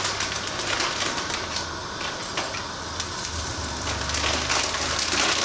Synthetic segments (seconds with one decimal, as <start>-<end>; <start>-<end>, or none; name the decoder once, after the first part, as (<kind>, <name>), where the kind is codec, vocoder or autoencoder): 1.8-2.9 (vocoder, BigVGAN v2)